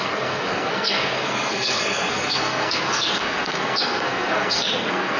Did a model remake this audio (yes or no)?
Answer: yes